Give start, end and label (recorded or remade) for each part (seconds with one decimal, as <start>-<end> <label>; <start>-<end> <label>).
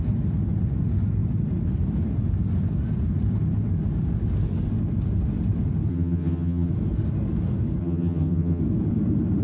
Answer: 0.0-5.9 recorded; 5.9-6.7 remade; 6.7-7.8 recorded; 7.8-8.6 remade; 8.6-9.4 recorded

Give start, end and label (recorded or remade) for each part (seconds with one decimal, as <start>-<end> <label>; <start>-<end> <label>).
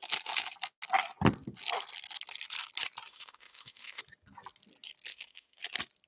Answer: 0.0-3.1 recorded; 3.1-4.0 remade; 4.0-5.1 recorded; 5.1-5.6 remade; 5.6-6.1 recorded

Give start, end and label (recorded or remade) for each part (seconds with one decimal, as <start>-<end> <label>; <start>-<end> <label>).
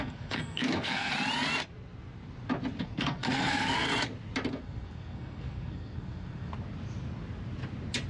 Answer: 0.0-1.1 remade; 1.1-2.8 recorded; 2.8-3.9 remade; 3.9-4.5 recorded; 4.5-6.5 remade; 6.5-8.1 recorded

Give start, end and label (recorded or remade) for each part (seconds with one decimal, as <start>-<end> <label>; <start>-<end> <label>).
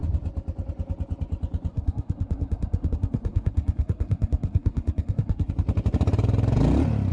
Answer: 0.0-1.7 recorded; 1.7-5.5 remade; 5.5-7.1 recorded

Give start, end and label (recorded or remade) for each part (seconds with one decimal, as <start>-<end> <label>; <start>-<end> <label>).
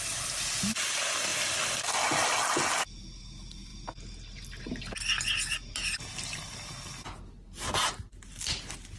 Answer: 0.0-9.0 recorded